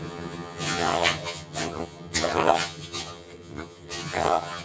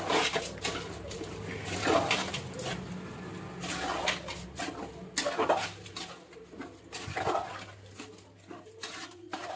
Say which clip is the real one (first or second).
second